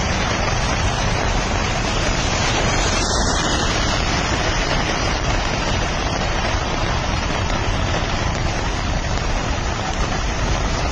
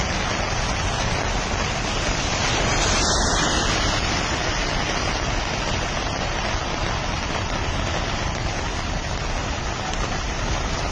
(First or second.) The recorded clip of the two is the second